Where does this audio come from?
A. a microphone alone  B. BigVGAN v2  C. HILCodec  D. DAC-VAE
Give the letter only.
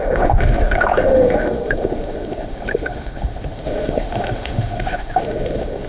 D